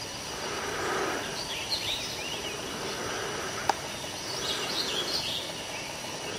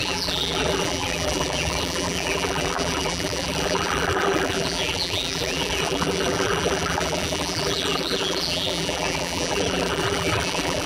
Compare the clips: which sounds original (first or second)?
first